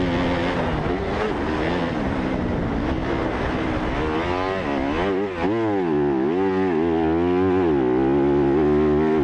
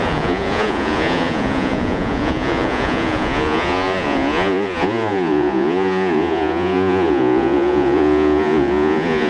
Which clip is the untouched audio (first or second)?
first